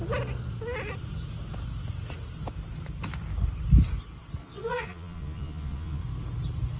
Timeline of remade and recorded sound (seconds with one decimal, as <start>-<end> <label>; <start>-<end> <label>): 0.0-4.4 recorded; 4.4-6.0 remade; 6.0-6.8 recorded